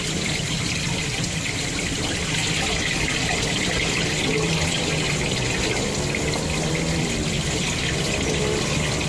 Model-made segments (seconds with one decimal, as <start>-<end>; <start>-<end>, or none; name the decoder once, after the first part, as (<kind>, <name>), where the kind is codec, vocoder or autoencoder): 0.0-2.4 (vocoder, BigVGAN v2); 7.0-9.1